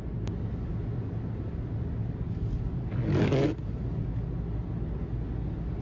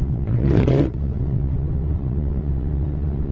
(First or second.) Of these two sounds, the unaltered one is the first